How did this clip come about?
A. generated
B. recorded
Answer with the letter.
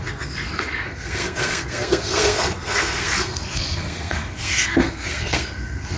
A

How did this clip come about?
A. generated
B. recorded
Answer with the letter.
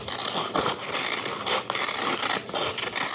B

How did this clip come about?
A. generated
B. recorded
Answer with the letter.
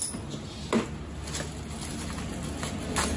B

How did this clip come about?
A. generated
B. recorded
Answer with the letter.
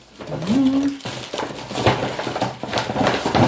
B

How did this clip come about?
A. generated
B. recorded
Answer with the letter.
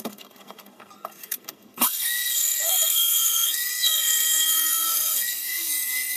A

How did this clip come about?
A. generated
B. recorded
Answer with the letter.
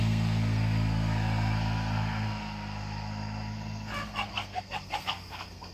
A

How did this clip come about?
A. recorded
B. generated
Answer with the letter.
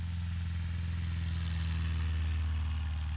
A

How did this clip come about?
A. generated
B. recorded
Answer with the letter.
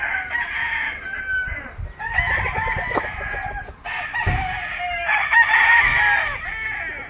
B